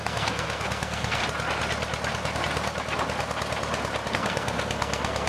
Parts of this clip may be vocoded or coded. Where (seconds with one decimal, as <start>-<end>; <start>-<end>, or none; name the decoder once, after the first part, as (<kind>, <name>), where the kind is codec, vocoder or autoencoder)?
0.0-1.2 (codec, SNAC); 4.1-5.3